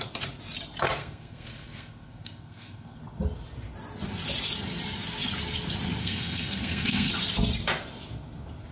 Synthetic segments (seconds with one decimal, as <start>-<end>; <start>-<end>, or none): 1.0-3.0; 6.0-7.1